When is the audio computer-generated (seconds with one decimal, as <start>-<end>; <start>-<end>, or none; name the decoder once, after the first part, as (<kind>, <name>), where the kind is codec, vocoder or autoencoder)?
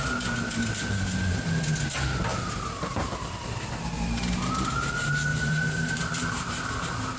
0.6-1.7 (vocoder, BigVGAN v2); 2.3-3.7; 5.3-7.2